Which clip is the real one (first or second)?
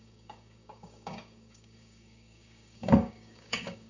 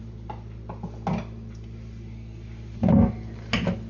second